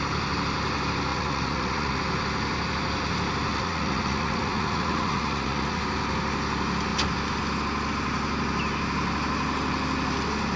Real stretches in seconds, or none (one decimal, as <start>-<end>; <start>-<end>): 0.0-1.1; 2.0-3.5; 5.8-10.6